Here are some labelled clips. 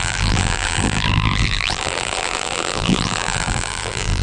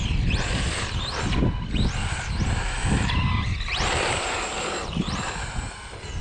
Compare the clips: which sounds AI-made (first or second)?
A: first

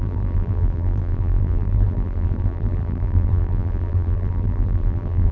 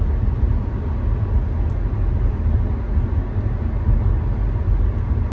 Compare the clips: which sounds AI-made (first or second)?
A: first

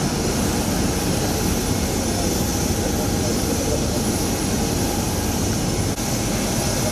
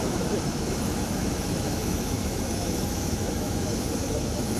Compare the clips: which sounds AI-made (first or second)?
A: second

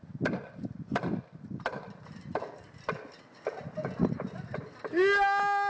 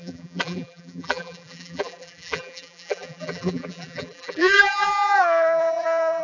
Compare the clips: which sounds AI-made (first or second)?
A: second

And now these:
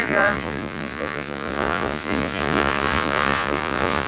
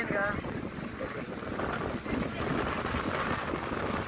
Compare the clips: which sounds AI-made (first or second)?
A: first